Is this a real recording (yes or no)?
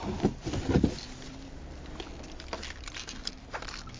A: yes